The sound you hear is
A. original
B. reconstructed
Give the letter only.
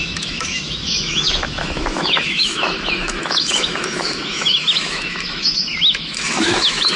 B